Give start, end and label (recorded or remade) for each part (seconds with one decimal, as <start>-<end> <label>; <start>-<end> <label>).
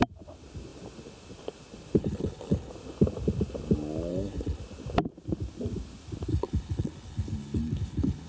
0.0-2.0 recorded; 2.0-2.7 remade; 2.7-4.1 recorded; 4.1-4.6 remade; 4.6-6.3 recorded; 6.3-8.3 remade